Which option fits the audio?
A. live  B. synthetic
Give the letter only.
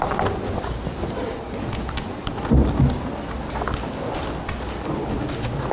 A